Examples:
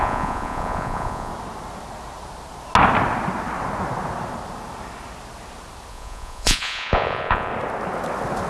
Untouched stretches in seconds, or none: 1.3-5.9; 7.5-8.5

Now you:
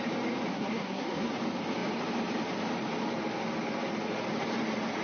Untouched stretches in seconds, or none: 0.0-0.5; 1.3-5.0

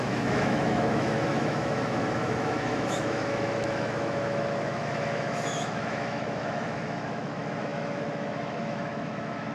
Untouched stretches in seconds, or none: none

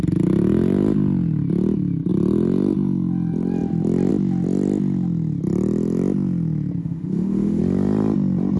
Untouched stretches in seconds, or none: 0.0-6.8; 7.6-8.6

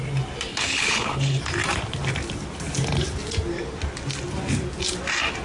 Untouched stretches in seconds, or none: 0.0-0.5; 1.4-5.4

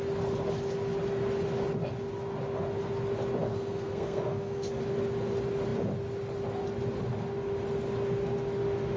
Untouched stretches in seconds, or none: 0.0-3.5; 4.8-9.0

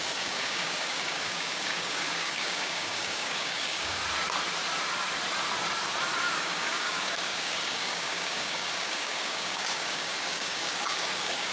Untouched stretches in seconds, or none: 4.0-6.4